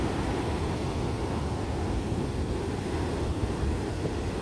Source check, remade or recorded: recorded